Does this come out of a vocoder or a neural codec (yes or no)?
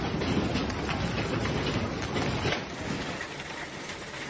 no